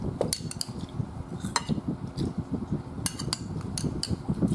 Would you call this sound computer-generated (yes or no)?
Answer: no